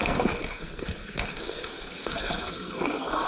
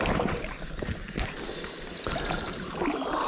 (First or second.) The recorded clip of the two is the second